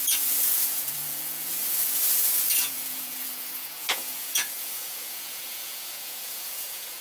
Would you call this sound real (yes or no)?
no